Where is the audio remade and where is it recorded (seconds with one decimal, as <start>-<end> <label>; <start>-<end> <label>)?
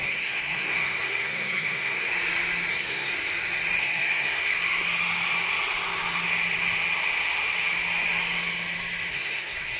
0.0-2.1 remade; 2.1-2.7 recorded; 2.7-3.1 remade; 3.1-3.8 recorded; 3.8-4.5 remade; 4.5-9.1 recorded; 9.1-9.8 remade